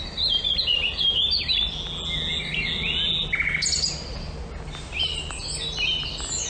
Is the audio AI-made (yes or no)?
no